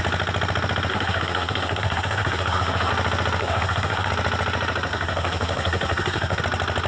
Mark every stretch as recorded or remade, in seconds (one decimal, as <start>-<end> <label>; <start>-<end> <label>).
0.0-0.9 recorded; 0.9-2.9 remade; 2.9-3.4 recorded; 3.4-4.1 remade; 4.1-4.9 recorded; 4.9-6.4 remade; 6.4-6.9 recorded